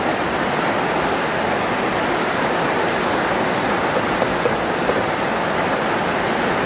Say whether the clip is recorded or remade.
recorded